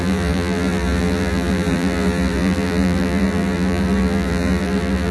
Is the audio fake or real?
fake